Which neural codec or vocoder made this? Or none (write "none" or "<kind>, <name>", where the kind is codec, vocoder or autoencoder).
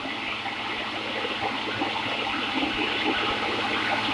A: none